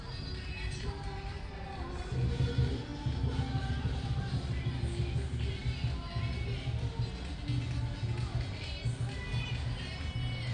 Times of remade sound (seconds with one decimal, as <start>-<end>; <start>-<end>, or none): none